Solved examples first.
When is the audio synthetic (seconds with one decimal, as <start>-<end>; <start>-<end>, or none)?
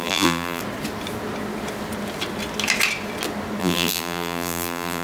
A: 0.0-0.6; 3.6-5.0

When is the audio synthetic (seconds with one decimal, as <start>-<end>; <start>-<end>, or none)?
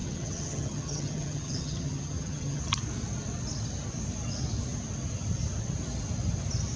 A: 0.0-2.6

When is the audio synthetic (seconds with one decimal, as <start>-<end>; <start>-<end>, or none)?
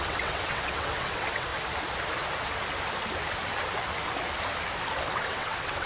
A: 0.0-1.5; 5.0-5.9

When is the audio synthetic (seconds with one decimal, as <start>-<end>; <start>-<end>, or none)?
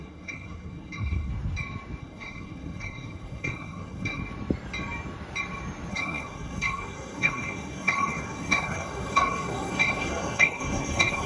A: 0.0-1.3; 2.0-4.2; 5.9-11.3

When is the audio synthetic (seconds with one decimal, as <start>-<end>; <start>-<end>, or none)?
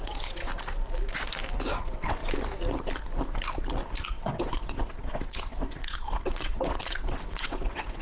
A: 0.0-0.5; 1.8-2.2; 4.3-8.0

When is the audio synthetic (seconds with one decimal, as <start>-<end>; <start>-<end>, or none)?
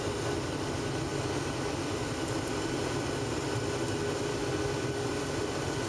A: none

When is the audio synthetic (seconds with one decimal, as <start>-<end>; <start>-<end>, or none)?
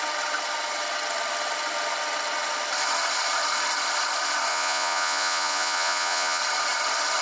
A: 4.5-6.4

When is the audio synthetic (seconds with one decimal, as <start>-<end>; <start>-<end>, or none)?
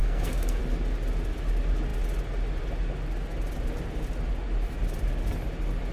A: 0.0-0.6